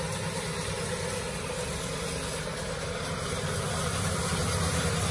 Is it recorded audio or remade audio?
recorded